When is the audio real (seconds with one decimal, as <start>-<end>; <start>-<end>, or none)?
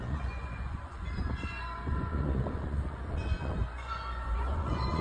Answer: none